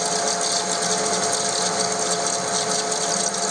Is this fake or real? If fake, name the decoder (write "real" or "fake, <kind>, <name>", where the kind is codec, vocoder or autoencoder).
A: real